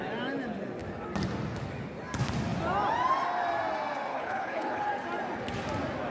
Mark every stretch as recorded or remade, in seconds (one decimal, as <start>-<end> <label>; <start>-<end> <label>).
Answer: 0.0-4.1 recorded; 4.1-4.9 remade; 4.9-6.1 recorded